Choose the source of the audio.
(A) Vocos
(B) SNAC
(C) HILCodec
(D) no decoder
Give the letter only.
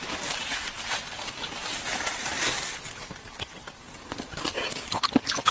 D